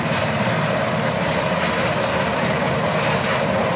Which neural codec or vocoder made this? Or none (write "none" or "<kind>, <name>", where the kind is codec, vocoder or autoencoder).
vocoder, BigVGAN v2